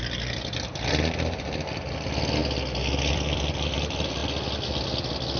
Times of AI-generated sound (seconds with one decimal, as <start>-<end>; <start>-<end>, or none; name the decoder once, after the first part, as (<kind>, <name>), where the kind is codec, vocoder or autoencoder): 0.0-2.4 (vocoder, BigVGAN v2); 3.1-4.2